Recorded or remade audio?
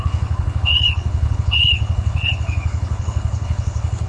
remade